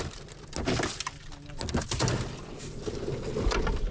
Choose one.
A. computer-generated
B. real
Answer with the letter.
B